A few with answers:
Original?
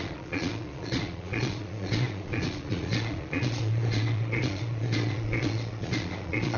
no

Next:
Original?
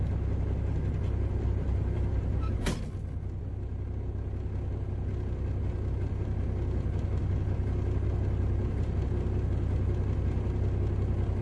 yes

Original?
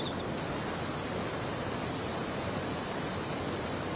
yes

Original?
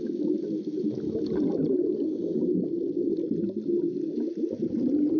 yes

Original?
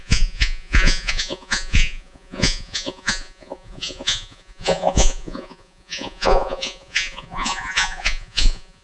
no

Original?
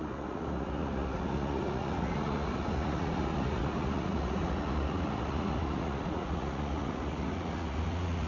no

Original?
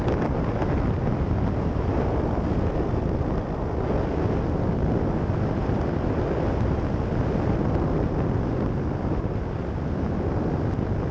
yes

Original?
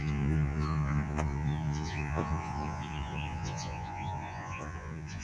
no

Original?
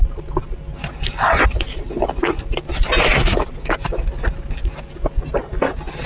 yes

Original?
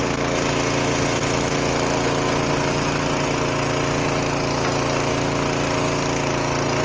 yes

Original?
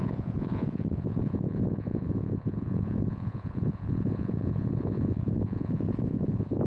no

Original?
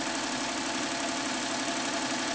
yes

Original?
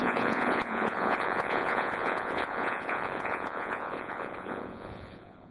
no